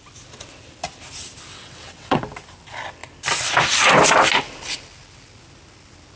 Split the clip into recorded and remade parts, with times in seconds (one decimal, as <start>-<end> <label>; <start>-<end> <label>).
0.0-1.5 recorded; 1.5-2.2 remade; 2.2-6.2 recorded